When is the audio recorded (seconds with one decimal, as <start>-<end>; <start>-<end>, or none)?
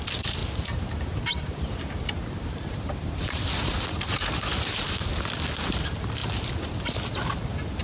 0.0-0.4; 5.1-7.8